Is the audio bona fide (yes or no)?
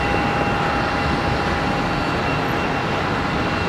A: yes